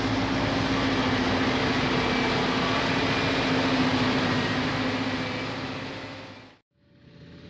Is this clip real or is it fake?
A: real